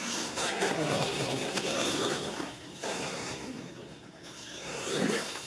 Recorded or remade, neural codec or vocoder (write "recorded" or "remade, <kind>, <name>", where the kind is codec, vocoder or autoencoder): remade, codec, SNAC